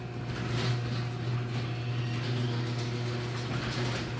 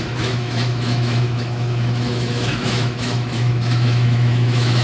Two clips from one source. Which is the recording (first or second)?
first